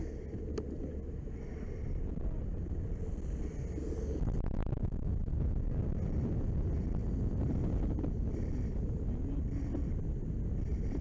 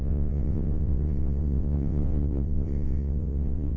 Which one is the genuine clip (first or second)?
first